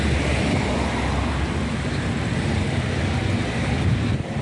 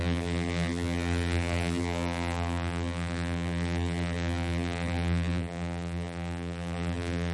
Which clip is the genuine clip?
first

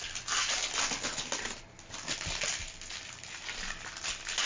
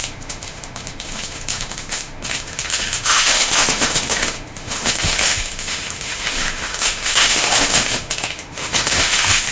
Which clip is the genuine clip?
first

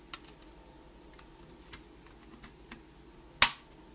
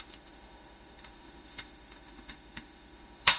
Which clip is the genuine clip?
first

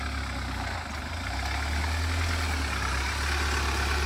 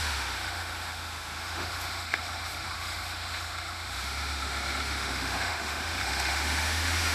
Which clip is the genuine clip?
first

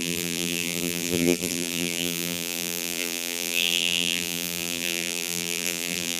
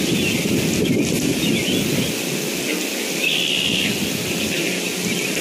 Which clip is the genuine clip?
second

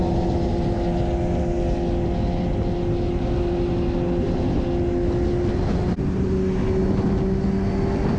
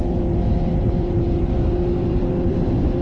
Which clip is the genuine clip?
first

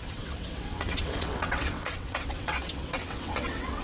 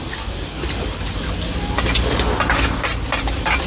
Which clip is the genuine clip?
second